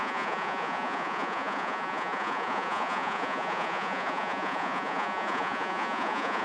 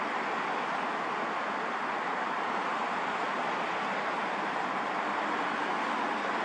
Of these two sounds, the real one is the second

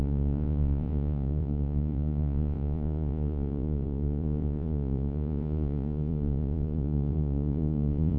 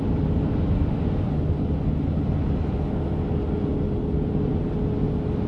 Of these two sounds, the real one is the second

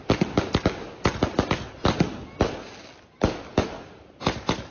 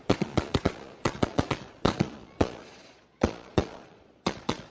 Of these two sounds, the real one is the first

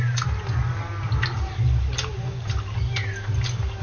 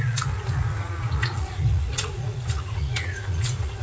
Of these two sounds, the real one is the first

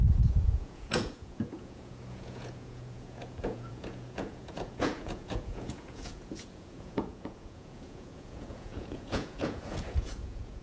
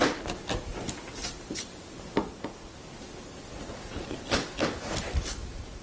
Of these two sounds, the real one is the second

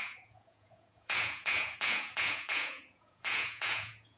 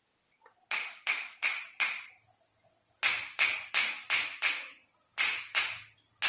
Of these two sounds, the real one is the second